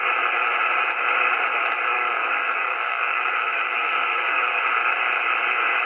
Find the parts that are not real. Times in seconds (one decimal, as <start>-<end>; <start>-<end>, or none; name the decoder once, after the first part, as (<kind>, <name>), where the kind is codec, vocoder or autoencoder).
1.9-4.4 (codec, DAC)